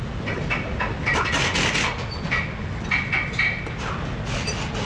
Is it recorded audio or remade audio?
recorded